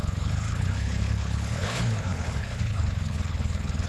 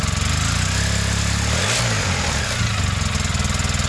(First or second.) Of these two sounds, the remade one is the first